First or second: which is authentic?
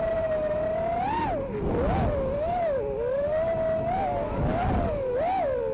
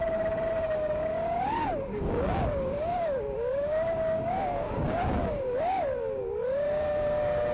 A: first